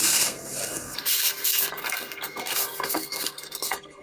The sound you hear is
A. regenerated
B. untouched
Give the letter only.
A